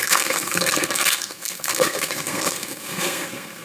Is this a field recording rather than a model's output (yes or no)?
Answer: no